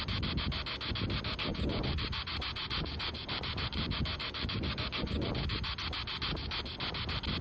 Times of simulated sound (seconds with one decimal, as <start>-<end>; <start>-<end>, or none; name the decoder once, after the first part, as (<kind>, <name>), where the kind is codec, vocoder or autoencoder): 1.5-5.3 (vocoder, Vocos)